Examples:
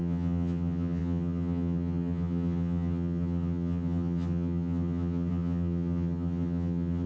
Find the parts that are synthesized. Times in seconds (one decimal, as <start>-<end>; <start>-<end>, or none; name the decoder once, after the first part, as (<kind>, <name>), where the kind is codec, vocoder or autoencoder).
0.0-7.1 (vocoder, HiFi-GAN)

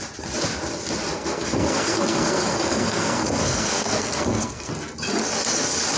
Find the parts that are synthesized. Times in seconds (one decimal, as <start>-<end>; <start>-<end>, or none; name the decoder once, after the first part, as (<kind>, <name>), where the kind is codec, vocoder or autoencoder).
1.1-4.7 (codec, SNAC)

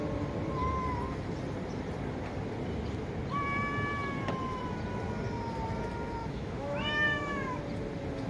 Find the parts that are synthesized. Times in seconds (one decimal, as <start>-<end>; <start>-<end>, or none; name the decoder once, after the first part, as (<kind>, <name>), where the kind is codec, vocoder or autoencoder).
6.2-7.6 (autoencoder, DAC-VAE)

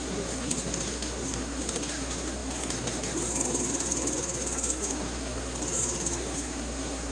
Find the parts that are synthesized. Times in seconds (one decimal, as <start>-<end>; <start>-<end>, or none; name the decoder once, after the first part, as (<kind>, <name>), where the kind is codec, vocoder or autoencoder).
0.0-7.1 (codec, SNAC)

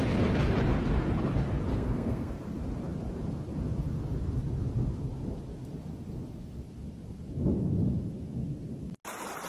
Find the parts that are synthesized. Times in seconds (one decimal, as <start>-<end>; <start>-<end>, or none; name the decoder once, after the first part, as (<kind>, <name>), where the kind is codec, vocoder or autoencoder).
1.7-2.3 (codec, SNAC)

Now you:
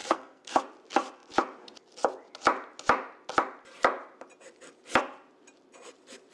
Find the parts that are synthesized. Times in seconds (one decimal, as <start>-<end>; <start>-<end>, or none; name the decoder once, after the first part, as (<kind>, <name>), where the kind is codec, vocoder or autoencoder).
0.0-0.6 (codec, SNAC)

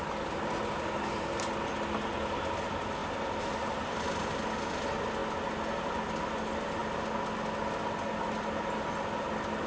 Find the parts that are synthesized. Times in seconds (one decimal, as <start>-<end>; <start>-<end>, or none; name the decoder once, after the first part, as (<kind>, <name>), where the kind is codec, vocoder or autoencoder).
none

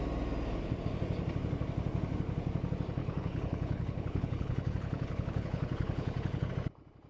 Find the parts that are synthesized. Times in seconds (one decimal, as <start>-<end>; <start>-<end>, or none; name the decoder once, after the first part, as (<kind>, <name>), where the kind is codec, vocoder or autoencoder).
3.0-6.5 (codec, HILCodec)